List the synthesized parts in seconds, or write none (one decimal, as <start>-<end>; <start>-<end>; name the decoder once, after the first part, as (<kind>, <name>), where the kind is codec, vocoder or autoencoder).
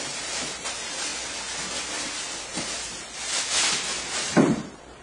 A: 0.0-1.1 (vocoder, BigVGAN v2); 4.1-5.0